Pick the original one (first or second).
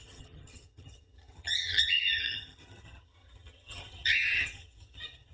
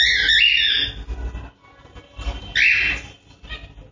second